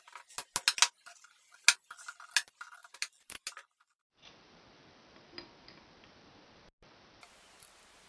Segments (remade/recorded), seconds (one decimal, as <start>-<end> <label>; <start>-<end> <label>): 0.0-8.1 recorded